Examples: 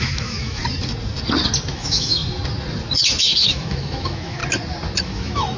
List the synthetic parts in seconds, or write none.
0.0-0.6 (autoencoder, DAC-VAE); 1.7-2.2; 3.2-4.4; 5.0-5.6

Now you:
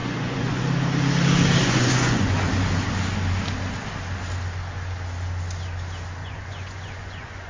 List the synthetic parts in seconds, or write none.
0.0-0.6 (vocoder, Vocos); 1.6-2.5; 6.2-7.5